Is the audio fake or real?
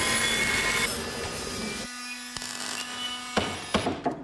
real